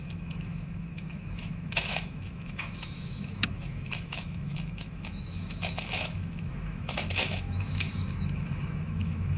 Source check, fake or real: fake